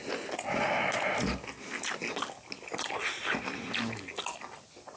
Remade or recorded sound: recorded